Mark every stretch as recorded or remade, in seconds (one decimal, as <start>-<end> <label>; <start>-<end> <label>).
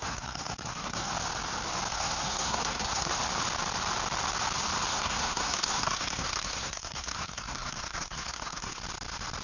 0.0-1.1 remade; 1.1-1.9 recorded; 1.9-3.2 remade; 3.2-4.9 recorded; 4.9-8.8 remade; 8.8-9.4 recorded